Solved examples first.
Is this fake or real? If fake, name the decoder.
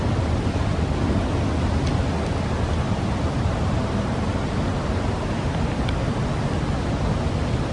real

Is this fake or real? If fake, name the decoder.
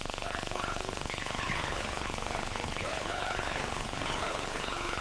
fake, codec, HILCodec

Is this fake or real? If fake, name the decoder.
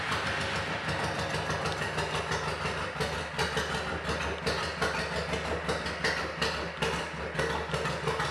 real